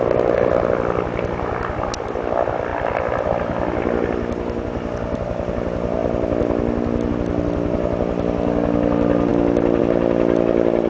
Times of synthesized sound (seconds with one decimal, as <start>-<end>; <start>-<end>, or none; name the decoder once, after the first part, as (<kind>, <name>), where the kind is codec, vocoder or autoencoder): none